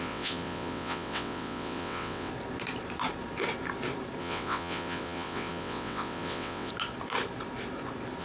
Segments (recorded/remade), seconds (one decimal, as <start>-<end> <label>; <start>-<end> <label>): 0.0-2.3 remade; 2.3-4.2 recorded; 4.2-6.7 remade; 6.7-8.2 recorded